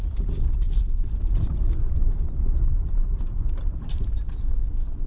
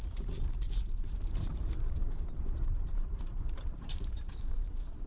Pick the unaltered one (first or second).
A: first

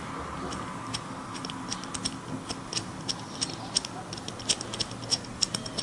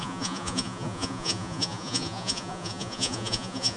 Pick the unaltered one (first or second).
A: first